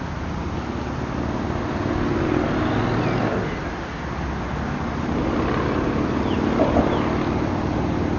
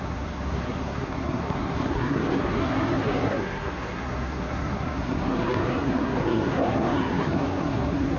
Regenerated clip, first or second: second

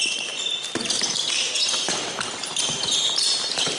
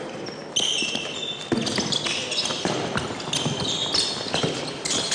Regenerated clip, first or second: first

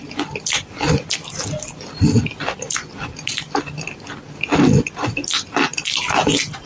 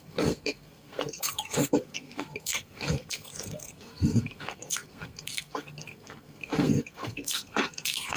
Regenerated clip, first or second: second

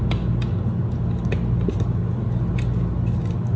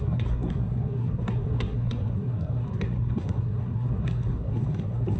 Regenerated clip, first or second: second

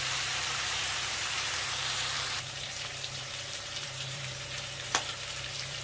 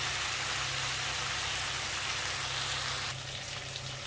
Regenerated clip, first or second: first